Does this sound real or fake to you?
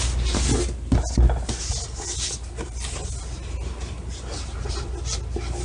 real